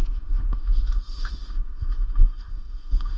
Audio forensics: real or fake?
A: fake